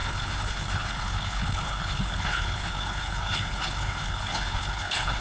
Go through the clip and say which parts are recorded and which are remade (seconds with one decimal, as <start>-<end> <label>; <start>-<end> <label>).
0.0-5.2 remade